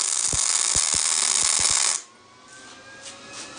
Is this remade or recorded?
recorded